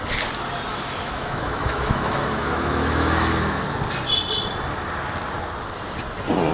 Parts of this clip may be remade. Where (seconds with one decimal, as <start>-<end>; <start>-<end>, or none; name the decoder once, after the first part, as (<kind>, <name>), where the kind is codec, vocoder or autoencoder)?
0.7-3.6 (autoencoder, DAC-VAE)